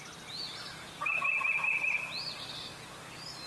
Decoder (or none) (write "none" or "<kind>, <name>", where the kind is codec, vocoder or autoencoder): vocoder, BigVGAN v2